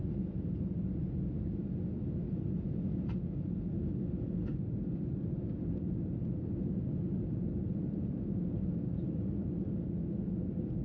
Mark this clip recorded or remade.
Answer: recorded